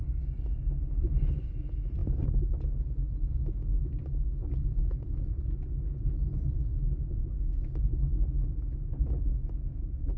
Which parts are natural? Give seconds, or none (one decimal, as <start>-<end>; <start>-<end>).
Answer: 0.0-10.2